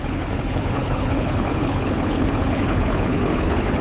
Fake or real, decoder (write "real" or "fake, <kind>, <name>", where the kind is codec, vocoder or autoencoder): fake, codec, HILCodec